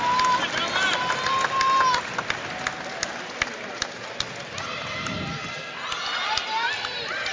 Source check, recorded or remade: recorded